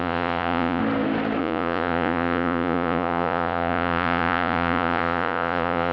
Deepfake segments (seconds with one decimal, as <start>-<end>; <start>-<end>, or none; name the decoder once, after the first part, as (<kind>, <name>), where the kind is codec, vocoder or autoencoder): 0.0-0.8 (vocoder, Vocos); 1.4-5.9